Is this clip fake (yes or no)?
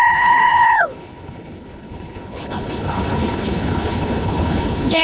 yes